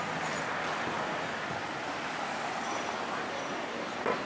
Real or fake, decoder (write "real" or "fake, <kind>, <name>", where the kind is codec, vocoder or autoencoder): real